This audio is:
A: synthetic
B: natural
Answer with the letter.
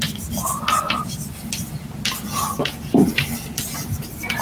B